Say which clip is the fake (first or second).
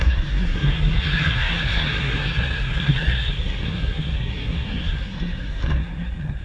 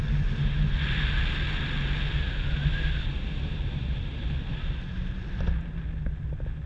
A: first